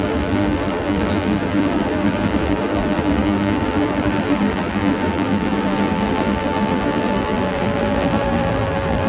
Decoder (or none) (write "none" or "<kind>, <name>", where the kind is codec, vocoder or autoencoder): vocoder, BigVGAN v2